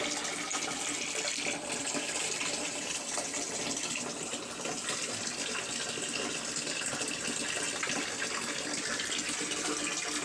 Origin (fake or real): real